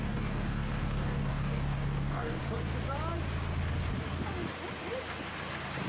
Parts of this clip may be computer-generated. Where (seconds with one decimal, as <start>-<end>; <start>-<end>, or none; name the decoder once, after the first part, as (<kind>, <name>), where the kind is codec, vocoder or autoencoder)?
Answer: 0.0-2.4 (codec, DAC)